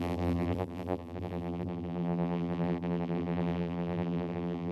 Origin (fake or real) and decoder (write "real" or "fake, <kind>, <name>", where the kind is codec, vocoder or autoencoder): fake, vocoder, BigVGAN v2